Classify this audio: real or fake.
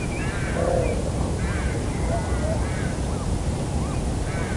real